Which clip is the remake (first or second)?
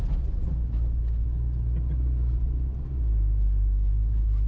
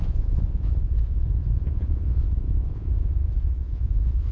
second